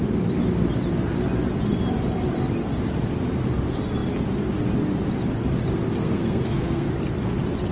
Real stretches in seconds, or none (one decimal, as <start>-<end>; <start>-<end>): 0.0-6.0; 6.9-7.7